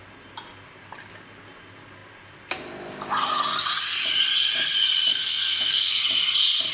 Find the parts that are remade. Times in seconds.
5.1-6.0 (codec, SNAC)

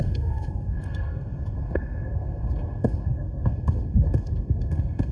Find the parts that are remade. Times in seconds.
0.0-5.1 (codec, SNAC)

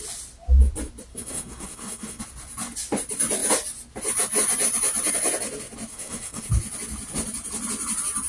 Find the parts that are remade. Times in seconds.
1.1-2.2 (codec, SNAC); 5.9-6.5

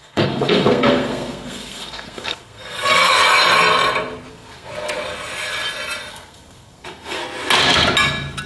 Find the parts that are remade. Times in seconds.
0.0-3.2 (codec, SNAC); 4.3-4.7; 6.1-7.2

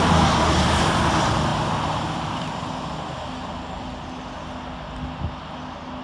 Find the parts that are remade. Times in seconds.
none